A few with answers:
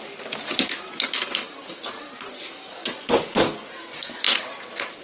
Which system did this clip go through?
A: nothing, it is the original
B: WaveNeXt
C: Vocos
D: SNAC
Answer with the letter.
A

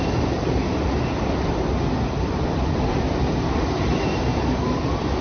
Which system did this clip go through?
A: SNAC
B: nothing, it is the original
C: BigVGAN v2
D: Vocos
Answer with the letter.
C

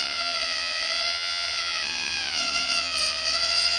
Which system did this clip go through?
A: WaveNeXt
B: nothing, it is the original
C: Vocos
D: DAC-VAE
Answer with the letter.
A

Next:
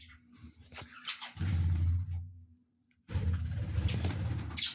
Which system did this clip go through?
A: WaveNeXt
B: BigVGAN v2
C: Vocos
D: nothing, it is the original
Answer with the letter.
B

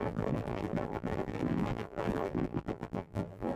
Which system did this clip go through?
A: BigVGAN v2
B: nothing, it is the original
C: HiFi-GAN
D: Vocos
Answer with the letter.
A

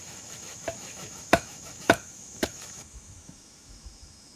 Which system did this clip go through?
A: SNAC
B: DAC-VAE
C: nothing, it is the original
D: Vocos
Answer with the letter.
B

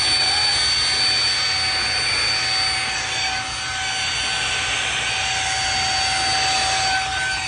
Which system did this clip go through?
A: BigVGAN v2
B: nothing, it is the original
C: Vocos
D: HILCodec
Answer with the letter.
B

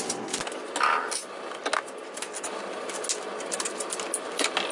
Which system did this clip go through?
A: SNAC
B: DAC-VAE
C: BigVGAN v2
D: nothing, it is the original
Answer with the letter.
D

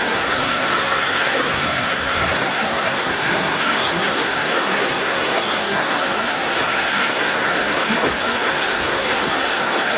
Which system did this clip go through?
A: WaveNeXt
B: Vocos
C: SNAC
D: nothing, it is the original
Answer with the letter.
C